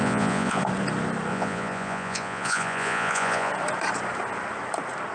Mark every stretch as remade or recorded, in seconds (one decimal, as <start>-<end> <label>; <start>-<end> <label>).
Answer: 0.0-0.6 remade; 0.6-1.3 recorded; 1.3-3.5 remade; 3.5-5.1 recorded

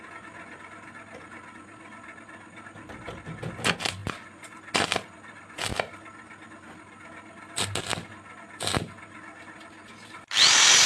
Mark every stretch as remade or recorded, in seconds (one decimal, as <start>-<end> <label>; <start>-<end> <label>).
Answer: 0.0-10.9 recorded

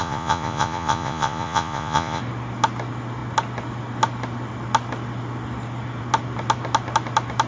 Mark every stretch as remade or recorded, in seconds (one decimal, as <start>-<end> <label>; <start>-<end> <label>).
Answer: 0.0-2.2 remade; 2.2-7.5 recorded

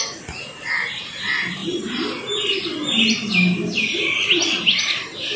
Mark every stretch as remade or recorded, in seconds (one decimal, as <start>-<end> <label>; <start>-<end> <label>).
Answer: 0.0-5.4 recorded

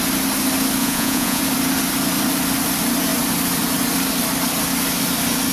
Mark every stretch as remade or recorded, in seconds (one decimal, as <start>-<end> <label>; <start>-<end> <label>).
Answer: 0.0-0.8 recorded; 0.8-1.4 remade; 1.4-5.5 recorded